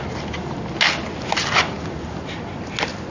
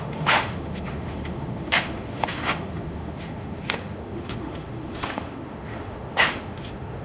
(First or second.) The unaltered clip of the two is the first